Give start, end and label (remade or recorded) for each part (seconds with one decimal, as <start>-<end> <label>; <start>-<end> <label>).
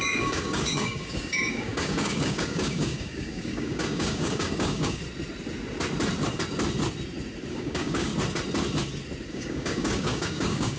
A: 0.0-5.0 remade; 5.0-7.5 recorded; 7.5-8.1 remade; 8.1-9.3 recorded; 9.3-10.8 remade